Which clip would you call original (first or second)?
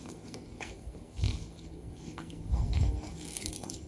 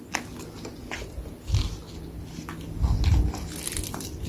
second